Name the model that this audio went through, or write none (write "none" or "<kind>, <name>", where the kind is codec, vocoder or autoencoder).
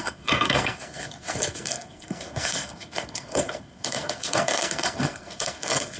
codec, SNAC